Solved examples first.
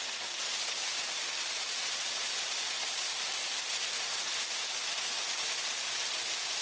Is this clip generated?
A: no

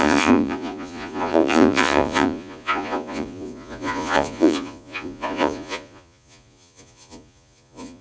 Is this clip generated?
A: yes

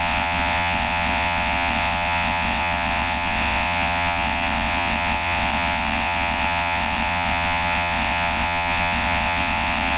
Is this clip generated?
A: yes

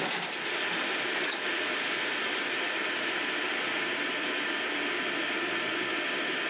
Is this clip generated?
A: no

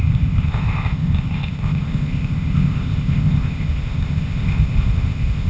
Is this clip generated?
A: yes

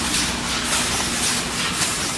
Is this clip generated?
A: no